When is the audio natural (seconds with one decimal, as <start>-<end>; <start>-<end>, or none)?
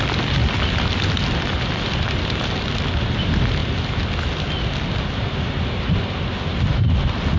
0.0-7.4